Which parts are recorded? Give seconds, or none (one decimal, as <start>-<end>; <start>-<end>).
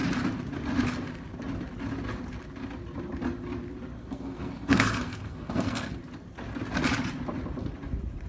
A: 0.0-4.0; 6.0-8.3